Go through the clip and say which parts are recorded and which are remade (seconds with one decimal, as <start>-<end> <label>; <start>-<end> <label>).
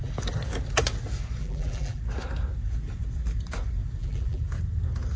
0.0-1.4 recorded; 1.4-2.0 remade; 2.0-4.0 recorded; 4.0-4.5 remade; 4.5-5.2 recorded